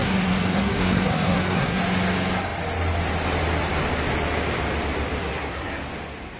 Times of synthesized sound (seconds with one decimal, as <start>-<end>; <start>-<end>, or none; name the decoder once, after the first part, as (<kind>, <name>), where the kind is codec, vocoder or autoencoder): 0.0-1.8 (codec, SNAC); 5.2-5.8